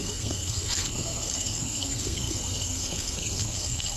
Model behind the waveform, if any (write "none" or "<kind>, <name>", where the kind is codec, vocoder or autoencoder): codec, SNAC